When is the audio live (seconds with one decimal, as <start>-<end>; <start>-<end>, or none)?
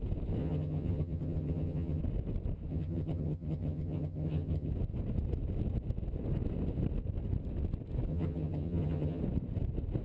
0.0-0.4; 2.0-2.7; 4.7-8.1; 9.2-10.0